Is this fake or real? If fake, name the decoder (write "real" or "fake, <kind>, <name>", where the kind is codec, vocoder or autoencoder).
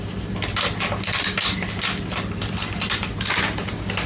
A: real